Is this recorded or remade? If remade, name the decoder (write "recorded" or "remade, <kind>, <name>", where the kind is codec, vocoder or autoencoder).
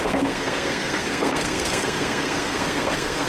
remade, codec, SNAC